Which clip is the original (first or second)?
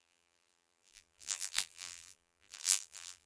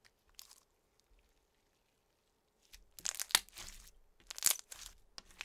second